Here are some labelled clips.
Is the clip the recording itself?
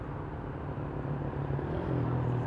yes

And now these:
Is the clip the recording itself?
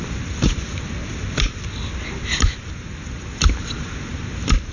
yes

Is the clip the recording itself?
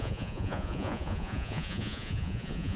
no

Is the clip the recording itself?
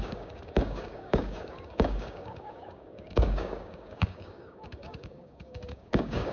no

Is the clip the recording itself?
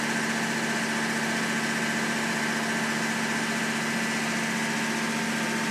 yes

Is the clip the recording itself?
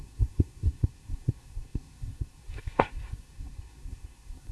no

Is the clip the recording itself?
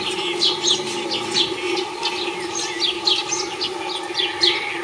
yes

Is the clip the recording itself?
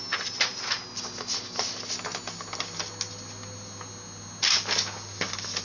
yes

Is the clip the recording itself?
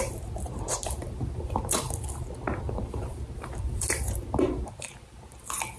no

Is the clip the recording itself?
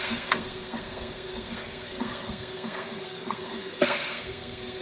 no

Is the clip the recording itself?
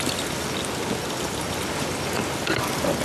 yes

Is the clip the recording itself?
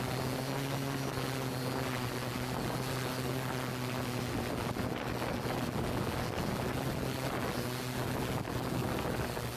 yes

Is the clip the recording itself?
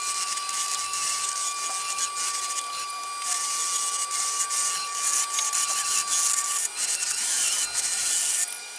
yes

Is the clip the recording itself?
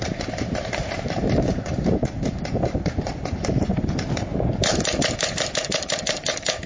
no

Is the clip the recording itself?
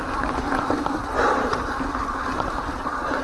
no